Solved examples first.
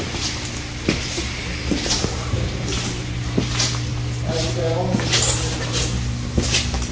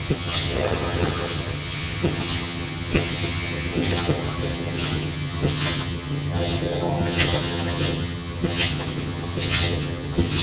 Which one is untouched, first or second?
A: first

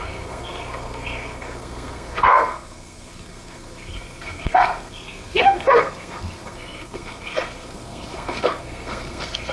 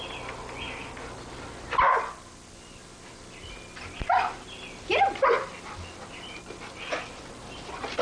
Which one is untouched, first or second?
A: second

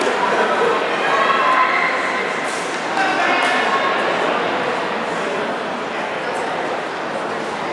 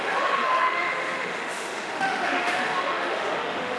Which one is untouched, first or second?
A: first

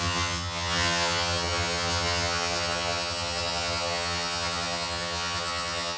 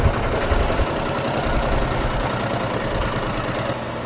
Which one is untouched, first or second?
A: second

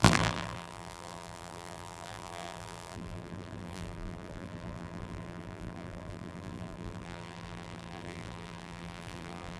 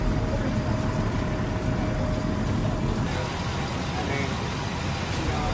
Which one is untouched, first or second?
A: second